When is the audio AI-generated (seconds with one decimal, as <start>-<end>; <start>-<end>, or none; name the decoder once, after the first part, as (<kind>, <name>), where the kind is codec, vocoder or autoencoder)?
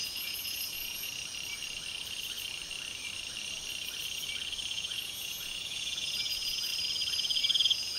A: 0.0-1.1 (vocoder, Vocos); 4.7-6.7; 7.4-8.0